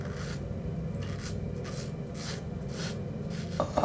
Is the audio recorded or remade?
recorded